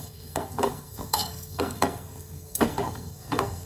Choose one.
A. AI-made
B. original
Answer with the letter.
A